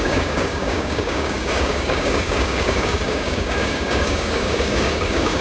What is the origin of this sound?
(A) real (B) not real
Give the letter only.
B